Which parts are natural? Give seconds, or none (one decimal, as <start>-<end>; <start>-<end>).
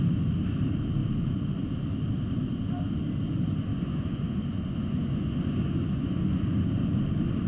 0.0-3.7; 6.4-7.5